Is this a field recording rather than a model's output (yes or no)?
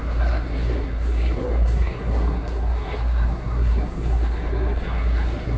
no